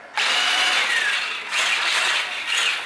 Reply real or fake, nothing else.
real